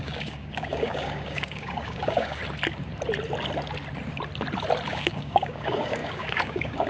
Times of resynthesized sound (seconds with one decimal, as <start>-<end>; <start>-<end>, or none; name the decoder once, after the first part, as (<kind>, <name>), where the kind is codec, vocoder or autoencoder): 0.0-2.4 (codec, DAC); 4.9-6.9